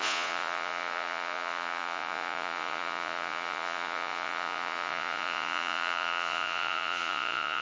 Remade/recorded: remade